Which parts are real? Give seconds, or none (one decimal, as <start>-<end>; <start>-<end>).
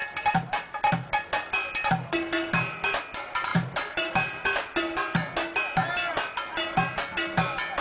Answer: 0.0-3.5; 4.1-7.8